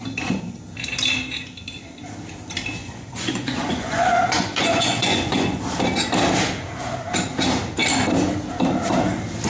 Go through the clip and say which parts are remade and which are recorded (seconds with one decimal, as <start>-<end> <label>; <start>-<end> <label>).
0.0-2.8 recorded; 2.8-5.6 remade; 5.6-9.5 recorded